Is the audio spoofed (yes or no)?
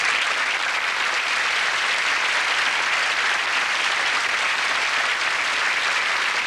no